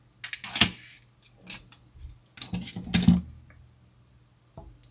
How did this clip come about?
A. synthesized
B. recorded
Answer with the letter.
B